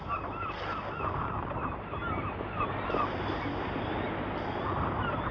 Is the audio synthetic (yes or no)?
no